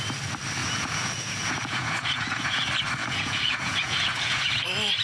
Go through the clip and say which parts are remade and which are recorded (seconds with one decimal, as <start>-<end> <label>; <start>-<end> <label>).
0.0-0.6 recorded; 0.6-2.6 remade; 2.6-3.0 recorded; 3.0-4.6 remade; 4.6-5.0 recorded